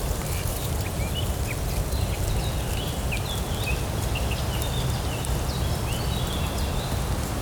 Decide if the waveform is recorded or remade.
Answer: recorded